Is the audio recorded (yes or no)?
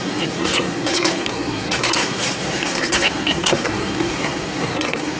no